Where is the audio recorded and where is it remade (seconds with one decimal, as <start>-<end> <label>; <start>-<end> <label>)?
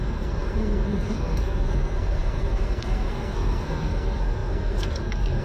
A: 0.0-5.4 remade